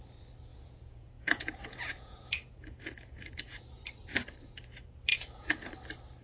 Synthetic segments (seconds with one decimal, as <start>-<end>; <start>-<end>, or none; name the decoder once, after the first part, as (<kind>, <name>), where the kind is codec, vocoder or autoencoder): 0.5-3.6 (vocoder, Vocos); 5.1-5.7